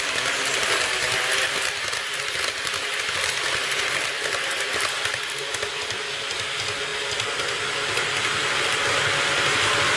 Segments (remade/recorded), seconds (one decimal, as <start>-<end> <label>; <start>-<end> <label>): 0.0-10.0 recorded